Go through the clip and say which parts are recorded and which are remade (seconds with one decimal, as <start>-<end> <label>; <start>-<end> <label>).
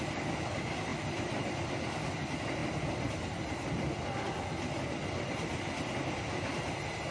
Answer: 0.0-7.1 recorded